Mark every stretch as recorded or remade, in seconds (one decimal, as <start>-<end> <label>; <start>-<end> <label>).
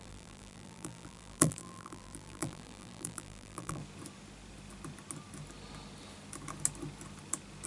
0.0-3.8 remade; 3.8-7.7 recorded